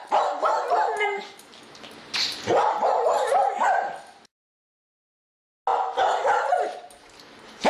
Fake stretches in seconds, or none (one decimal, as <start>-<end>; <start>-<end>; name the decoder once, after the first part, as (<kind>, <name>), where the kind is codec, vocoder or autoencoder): none